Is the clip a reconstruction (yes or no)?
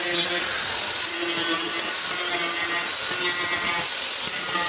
no